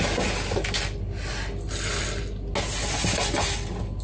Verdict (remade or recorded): recorded